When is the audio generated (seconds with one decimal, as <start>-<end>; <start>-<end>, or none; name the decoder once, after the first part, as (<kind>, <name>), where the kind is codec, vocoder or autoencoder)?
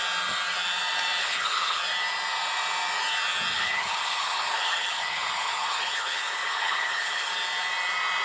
1.2-1.8 (codec, HILCodec); 3.5-7.3